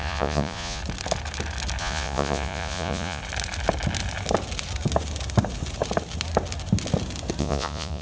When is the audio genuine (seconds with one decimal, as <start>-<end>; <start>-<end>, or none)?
0.8-1.8; 3.2-7.4